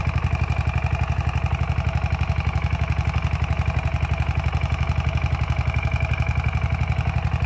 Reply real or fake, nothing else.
real